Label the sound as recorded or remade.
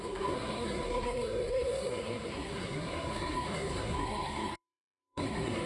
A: remade